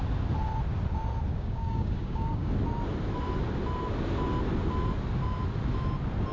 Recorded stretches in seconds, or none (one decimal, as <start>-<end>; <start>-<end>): 0.0-1.3; 2.5-6.3

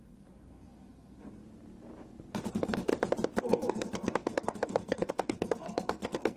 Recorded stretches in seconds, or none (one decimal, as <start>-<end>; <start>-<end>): 1.4-2.5; 2.9-3.4